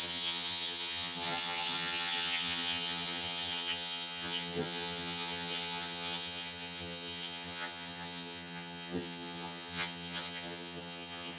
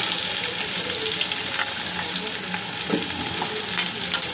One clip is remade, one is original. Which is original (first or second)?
second